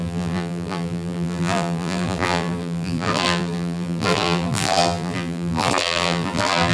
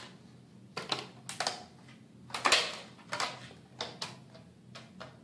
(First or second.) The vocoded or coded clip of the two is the first